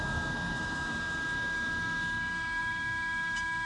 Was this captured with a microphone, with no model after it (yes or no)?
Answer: no